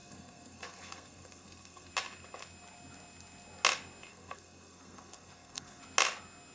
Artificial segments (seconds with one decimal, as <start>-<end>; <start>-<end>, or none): 0.0-1.9; 4.1-5.8